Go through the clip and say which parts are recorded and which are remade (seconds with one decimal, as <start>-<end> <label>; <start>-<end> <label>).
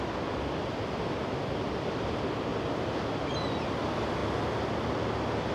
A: 0.0-5.5 recorded